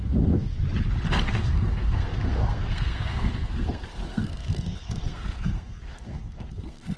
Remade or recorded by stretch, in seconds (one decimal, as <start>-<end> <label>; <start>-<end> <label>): 0.0-0.5 remade; 0.5-1.3 recorded; 1.3-7.0 remade